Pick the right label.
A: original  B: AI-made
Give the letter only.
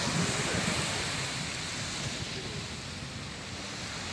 A